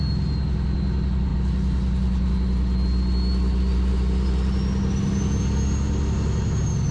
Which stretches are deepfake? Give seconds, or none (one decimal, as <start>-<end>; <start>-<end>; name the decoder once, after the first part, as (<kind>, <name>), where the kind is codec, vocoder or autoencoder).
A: none